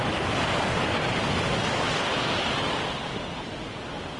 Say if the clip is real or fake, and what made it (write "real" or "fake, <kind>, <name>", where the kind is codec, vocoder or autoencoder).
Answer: fake, vocoder, BigVGAN v2